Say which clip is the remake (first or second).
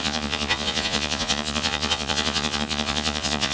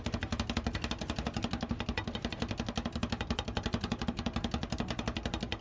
first